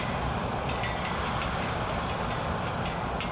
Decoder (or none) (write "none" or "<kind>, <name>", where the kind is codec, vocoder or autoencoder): none